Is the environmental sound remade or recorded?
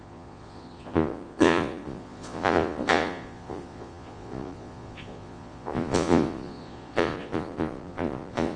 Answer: remade